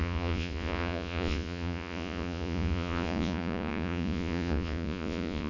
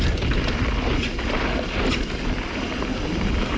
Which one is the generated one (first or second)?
first